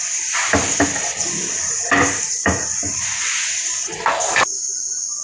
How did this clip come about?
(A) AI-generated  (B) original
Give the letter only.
B